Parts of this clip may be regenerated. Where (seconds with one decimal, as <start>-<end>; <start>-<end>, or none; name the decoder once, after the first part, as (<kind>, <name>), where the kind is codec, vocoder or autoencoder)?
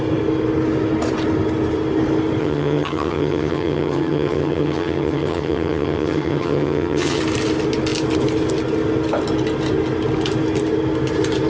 2.4-7.2 (vocoder, HiFi-GAN)